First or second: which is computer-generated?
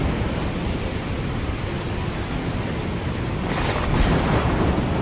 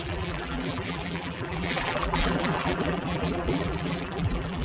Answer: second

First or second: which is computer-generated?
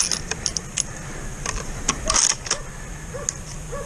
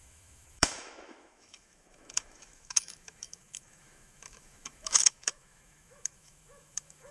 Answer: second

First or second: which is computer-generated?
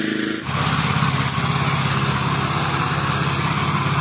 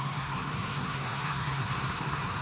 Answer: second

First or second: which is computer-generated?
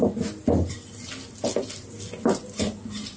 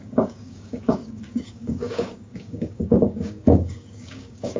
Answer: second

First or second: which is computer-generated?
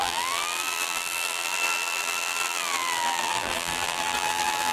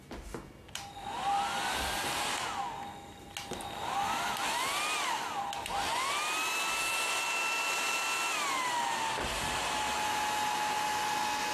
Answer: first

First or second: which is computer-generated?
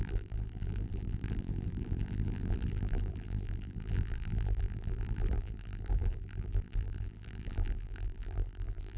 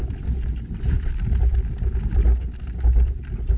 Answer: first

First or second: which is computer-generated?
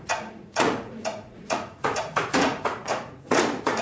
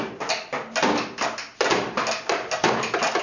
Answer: first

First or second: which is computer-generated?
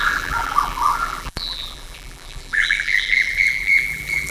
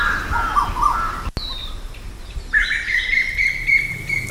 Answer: first